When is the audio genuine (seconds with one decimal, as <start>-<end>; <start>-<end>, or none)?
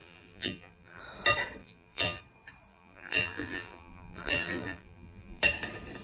1.0-1.6; 2.2-2.7; 5.4-6.0